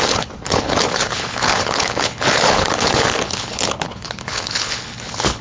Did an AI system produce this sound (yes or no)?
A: yes